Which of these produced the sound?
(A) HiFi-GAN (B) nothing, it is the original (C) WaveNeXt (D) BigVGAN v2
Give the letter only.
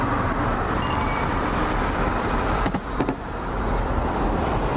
D